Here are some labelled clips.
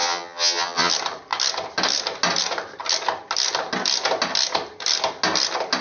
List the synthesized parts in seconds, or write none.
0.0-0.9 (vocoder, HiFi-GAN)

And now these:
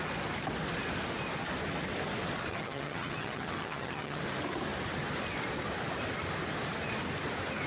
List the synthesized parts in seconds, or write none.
2.5-4.2 (vocoder, HiFi-GAN)

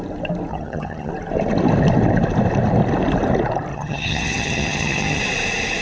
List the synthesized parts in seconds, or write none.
0.5-1.1 (vocoder, HiFi-GAN); 3.7-5.2